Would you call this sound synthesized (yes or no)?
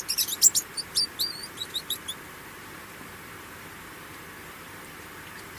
yes